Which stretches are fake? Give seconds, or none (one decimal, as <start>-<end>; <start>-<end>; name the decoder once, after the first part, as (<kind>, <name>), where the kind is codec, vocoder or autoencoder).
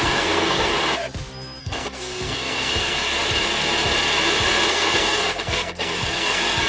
0.0-0.7 (codec, SNAC); 1.6-3.2; 4.7-6.7